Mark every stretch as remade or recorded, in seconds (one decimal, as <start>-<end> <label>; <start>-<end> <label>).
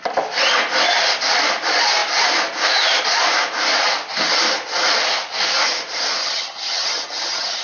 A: 0.0-6.2 recorded; 6.2-7.6 remade